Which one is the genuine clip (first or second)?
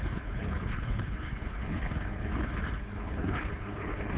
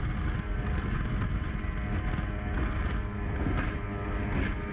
second